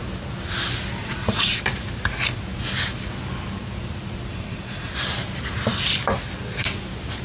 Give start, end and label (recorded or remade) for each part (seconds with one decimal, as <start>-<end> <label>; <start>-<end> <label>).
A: 0.0-1.0 recorded; 1.0-1.6 remade; 1.6-4.3 recorded; 4.3-4.9 remade; 4.9-7.2 recorded